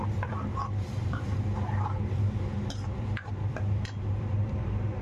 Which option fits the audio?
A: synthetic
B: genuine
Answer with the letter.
A